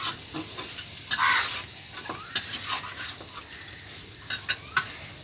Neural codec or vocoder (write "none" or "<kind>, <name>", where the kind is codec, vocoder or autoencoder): none